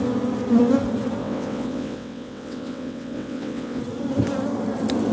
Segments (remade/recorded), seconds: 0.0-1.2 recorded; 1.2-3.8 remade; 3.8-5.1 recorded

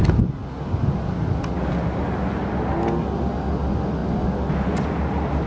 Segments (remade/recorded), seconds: 0.0-5.5 recorded

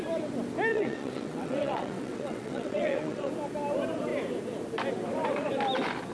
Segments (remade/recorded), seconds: 0.0-0.7 recorded; 0.7-3.3 remade; 3.3-6.1 recorded

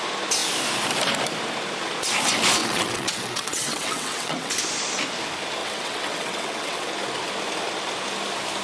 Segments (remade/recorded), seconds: 0.0-2.6 recorded; 2.6-4.5 remade; 4.5-5.6 recorded; 5.6-6.9 remade; 6.9-8.6 recorded

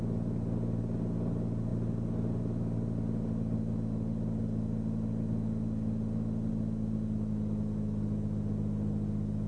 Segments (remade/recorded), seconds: 0.0-9.5 recorded